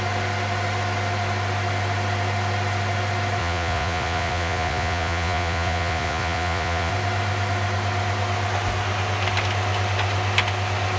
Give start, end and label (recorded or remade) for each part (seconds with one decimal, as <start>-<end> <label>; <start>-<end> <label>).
0.0-3.4 recorded; 3.4-6.9 remade; 6.9-11.0 recorded